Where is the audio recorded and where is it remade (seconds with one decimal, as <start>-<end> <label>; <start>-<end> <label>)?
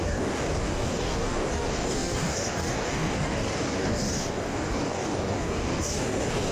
0.0-6.5 remade